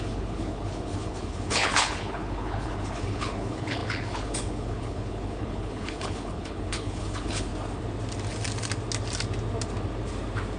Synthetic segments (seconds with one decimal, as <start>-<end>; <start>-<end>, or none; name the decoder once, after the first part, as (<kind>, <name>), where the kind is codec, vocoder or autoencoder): 0.0-7.5 (codec, HILCodec)